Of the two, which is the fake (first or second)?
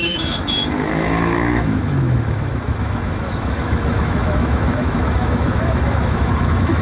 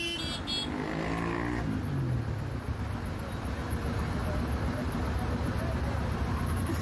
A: first